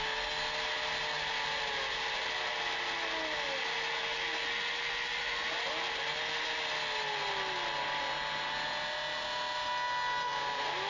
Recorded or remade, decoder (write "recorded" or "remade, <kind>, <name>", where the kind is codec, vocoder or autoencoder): recorded